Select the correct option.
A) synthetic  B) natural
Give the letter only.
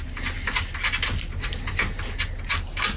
B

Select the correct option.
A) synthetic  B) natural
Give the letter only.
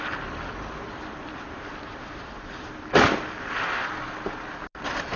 B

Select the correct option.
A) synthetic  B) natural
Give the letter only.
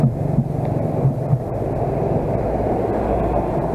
B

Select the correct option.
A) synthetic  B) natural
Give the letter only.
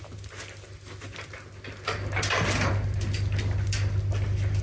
B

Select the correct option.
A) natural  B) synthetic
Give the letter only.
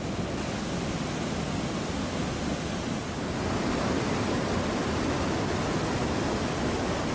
A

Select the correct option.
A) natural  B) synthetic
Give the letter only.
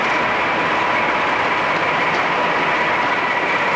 A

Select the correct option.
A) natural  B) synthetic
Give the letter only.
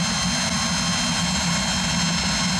A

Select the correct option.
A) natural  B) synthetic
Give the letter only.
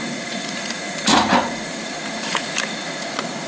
B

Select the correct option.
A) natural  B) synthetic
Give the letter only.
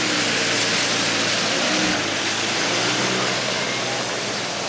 A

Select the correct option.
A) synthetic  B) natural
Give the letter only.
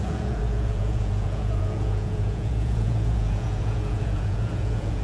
A